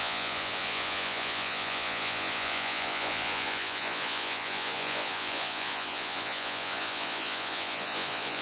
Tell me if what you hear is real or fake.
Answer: fake